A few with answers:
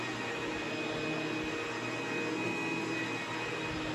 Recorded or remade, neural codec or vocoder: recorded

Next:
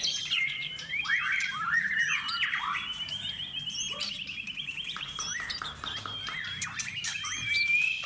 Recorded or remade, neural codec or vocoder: remade, vocoder, BigVGAN v2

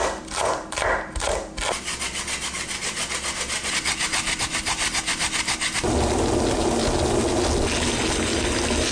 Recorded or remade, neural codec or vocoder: recorded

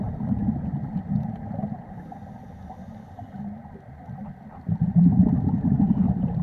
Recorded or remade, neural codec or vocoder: recorded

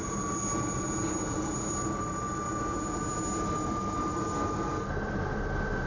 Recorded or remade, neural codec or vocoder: remade, vocoder, BigVGAN v2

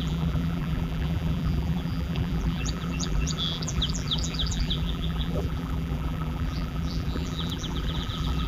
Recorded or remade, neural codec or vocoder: remade, vocoder, BigVGAN v2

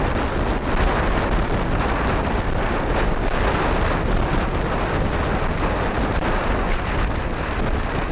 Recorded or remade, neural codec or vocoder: recorded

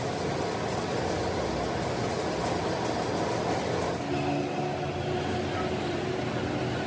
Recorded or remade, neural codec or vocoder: recorded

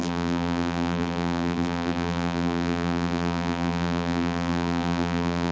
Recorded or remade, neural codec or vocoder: remade, vocoder, BigVGAN v2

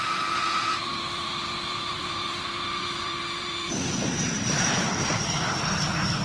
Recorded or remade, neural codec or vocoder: remade, vocoder, BigVGAN v2